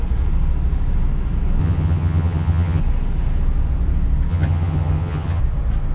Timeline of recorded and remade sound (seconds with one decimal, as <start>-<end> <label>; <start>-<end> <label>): 0.0-1.6 recorded; 1.6-2.8 remade; 2.8-4.3 recorded; 4.3-5.4 remade; 5.4-5.9 recorded